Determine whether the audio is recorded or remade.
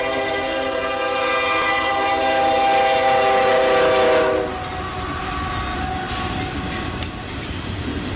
recorded